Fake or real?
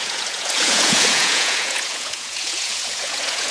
fake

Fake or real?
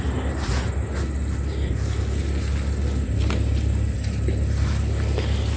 real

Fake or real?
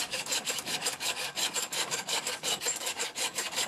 fake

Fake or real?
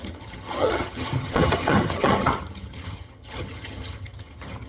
fake